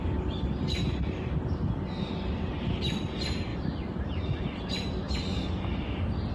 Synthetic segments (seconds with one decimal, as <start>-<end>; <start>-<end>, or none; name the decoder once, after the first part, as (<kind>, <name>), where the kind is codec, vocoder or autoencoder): none